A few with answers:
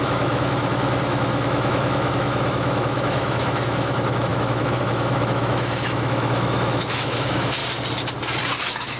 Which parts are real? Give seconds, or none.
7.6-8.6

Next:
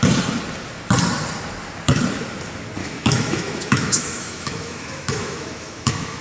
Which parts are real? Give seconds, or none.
0.0-2.8

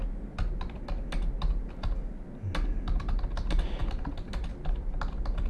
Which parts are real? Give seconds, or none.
0.0-5.5

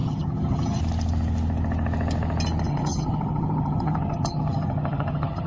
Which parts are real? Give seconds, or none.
0.8-2.7